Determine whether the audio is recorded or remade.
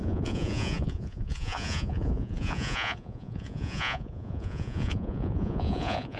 remade